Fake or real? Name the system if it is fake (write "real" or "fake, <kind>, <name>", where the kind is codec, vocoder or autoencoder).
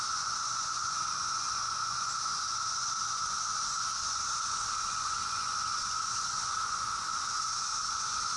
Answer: fake, vocoder, Vocos